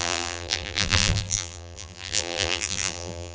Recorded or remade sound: remade